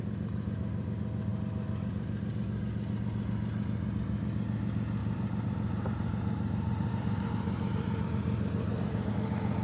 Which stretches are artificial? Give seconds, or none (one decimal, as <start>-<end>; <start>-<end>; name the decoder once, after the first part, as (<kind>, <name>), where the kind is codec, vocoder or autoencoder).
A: 5.0-9.1 (vocoder, BigVGAN v2)